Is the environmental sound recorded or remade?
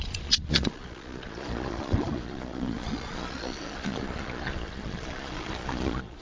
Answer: remade